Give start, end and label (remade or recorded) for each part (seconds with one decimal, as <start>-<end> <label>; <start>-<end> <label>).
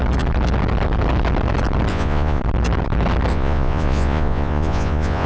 0.0-1.9 recorded; 1.9-2.4 remade; 2.4-3.3 recorded; 3.3-5.3 remade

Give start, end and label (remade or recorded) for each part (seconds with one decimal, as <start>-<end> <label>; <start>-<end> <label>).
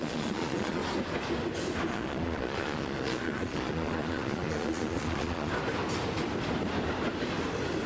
0.0-0.8 remade; 0.8-1.9 recorded; 1.9-5.5 remade; 5.5-7.9 recorded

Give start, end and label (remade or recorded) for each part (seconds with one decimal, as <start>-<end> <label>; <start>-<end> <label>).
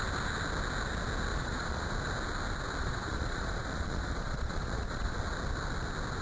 0.0-1.3 recorded; 1.3-1.9 remade; 1.9-2.8 recorded; 2.8-5.2 remade; 5.2-6.2 recorded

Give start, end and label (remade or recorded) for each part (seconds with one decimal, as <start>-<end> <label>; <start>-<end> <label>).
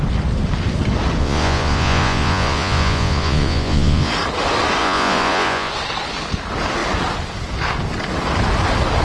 0.0-1.2 recorded; 1.2-4.1 remade; 4.1-4.8 recorded; 4.8-5.7 remade; 5.7-9.0 recorded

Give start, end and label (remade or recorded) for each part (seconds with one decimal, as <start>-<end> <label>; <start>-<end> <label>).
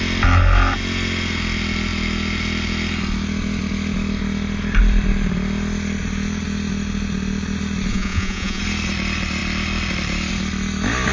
0.0-7.9 recorded; 7.9-8.6 remade; 8.6-11.1 recorded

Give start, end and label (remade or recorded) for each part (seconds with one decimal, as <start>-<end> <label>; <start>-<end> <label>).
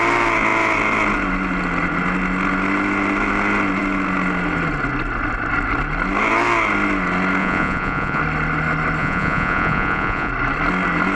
0.0-7.4 recorded; 7.4-8.2 remade; 8.2-9.0 recorded; 9.0-10.3 remade; 10.3-11.1 recorded